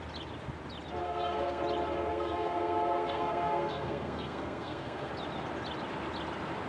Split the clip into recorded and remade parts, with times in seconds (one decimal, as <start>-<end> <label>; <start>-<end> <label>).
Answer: 0.0-1.0 recorded; 1.0-1.6 remade; 1.6-2.1 recorded; 2.1-5.1 remade; 5.1-6.7 recorded